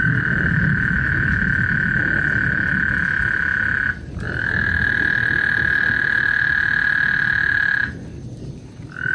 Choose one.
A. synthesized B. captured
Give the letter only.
B